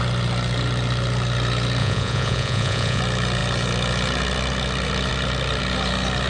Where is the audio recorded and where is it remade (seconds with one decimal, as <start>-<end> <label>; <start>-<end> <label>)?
0.0-1.8 recorded; 1.8-3.0 remade; 3.0-6.3 recorded